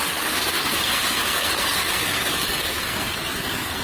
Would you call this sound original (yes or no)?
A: no